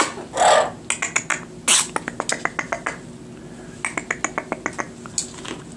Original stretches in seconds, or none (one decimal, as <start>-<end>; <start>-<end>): 0.0-5.8